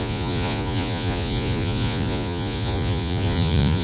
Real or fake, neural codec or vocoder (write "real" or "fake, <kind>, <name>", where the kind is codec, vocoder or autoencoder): fake, vocoder, Vocos